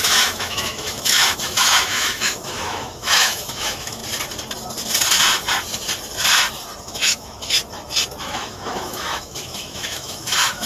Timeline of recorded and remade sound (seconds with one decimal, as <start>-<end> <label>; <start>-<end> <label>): 0.0-4.0 remade; 4.0-6.8 recorded; 6.8-7.6 remade; 7.6-8.2 recorded; 8.2-10.7 remade